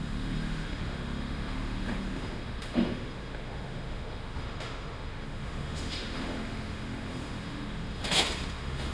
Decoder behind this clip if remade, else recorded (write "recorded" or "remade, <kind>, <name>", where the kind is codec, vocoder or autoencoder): remade, autoencoder, DAC-VAE